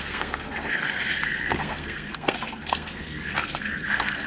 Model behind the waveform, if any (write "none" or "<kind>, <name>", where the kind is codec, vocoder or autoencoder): codec, SNAC